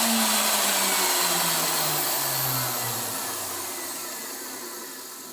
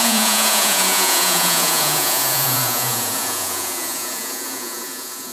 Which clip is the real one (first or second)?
first